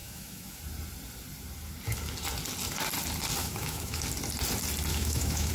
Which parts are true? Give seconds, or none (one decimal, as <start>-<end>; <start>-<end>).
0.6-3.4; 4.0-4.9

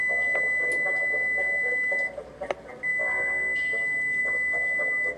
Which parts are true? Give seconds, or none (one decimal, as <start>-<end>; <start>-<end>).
0.0-5.2

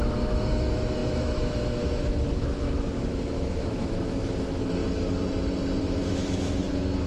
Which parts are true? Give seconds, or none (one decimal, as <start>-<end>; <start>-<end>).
4.8-5.8

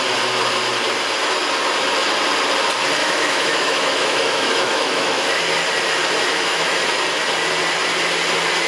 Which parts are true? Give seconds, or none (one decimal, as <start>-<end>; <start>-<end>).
0.0-3.0; 5.4-6.3; 6.8-8.7